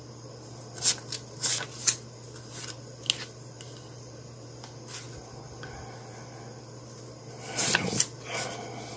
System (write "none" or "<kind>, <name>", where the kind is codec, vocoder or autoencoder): none